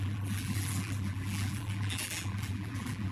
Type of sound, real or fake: fake